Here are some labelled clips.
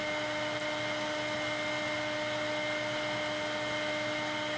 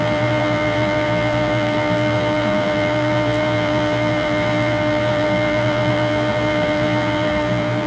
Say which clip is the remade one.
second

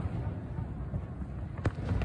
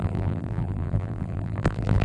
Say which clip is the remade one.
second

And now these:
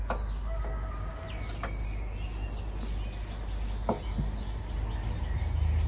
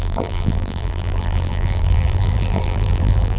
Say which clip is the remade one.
second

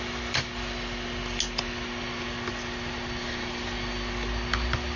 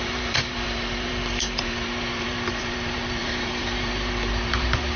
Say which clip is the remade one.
second